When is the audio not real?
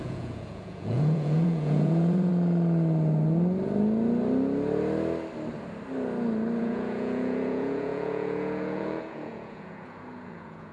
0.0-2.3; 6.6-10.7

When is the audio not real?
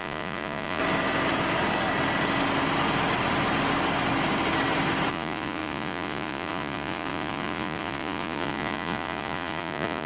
0.0-0.8; 5.1-10.1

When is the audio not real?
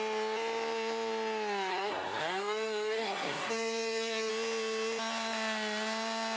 1.7-4.3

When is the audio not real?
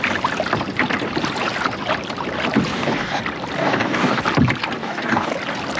2.7-3.2; 3.6-4.2; 4.8-5.3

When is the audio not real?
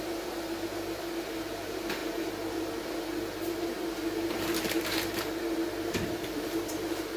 0.0-2.0; 4.3-7.2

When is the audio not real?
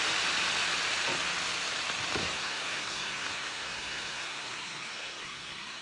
2.2-5.8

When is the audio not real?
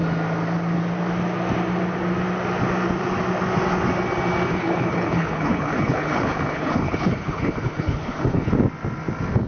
4.5-8.5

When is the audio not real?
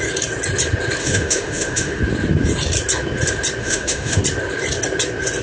1.0-2.0; 3.6-4.2